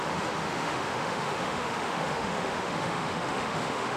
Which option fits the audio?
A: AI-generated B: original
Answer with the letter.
A